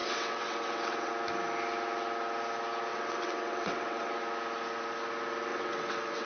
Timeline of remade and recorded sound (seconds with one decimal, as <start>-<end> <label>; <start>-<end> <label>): 0.0-1.1 remade; 1.1-2.9 recorded; 2.9-4.2 remade; 4.2-5.5 recorded; 5.5-6.3 remade